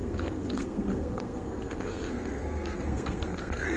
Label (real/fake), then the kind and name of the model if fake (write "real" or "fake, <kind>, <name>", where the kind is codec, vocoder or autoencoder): fake, codec, SNAC